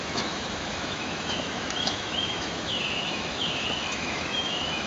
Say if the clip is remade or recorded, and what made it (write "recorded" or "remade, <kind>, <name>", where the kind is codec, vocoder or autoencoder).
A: remade, autoencoder, DAC-VAE